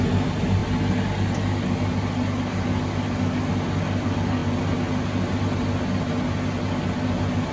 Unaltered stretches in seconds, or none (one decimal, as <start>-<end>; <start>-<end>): 0.0-7.5

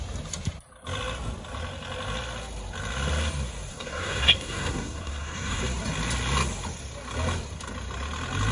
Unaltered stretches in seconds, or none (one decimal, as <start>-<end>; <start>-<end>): 0.0-3.7; 5.6-8.5

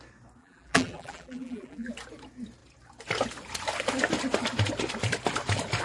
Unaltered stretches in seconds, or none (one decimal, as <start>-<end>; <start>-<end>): 0.0-0.4; 1.9-5.8

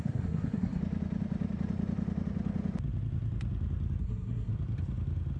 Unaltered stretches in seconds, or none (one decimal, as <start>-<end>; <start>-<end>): 0.8-4.0; 4.5-5.4

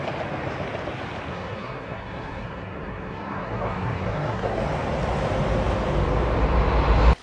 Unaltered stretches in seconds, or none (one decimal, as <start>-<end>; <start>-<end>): 0.0-1.3; 4.6-7.2

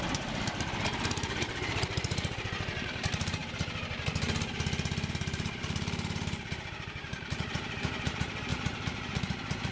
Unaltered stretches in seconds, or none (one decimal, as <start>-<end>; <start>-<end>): 3.4-5.1

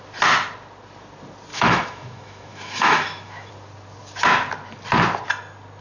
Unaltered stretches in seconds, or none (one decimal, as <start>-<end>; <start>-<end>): 0.0-1.5; 3.5-5.8

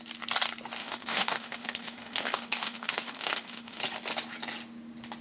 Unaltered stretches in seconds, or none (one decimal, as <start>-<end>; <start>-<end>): 0.0-0.8; 3.8-5.2